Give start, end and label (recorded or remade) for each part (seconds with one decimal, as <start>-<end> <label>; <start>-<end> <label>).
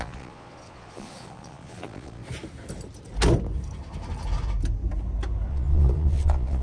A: 0.0-2.2 remade; 2.2-5.5 recorded; 5.5-6.6 remade